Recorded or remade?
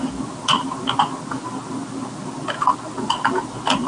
recorded